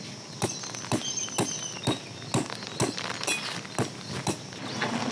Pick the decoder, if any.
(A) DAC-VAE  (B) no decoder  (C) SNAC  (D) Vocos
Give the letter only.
B